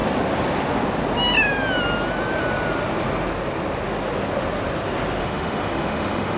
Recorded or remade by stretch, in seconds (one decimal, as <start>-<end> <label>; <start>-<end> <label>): 0.0-5.2 recorded; 5.2-6.4 remade